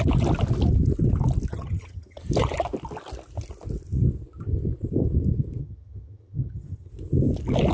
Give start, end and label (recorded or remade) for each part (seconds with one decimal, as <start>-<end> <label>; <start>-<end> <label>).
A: 0.0-1.5 recorded; 1.5-2.2 remade; 2.2-5.6 recorded; 5.6-6.9 remade; 6.9-7.7 recorded